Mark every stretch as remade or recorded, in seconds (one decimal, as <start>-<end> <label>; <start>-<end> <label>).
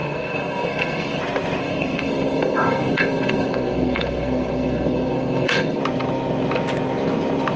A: 0.0-1.2 remade; 1.2-1.6 recorded; 1.6-5.8 remade; 5.8-7.6 recorded